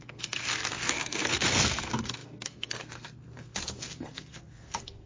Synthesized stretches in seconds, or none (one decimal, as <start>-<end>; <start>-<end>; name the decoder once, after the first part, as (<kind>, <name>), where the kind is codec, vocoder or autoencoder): 0.0-5.1 (codec, SNAC)